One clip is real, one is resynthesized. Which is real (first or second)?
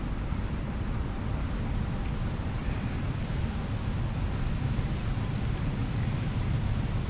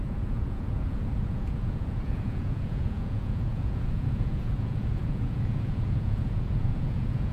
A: first